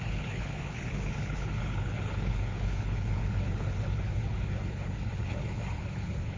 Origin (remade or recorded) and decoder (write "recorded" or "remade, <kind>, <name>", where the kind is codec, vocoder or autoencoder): remade, codec, HILCodec